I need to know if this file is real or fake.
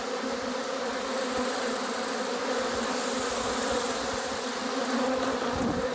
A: real